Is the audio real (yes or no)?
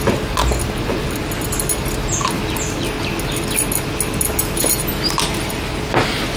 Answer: yes